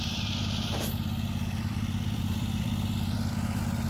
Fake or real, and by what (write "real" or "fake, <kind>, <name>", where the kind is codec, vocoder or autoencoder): fake, vocoder, BigVGAN v2